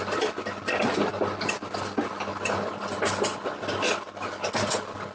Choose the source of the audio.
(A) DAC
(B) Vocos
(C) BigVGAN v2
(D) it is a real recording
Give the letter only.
D